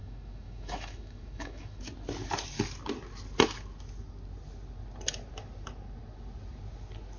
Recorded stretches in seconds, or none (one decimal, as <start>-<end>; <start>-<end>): 1.8-7.2